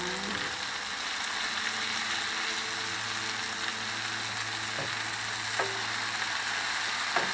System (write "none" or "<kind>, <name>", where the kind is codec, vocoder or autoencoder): none